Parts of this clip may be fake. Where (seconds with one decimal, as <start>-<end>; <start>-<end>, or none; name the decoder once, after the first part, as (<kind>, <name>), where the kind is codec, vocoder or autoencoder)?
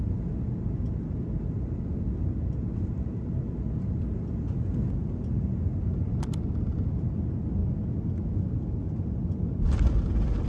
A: none